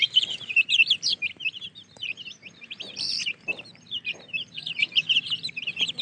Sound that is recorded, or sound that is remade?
remade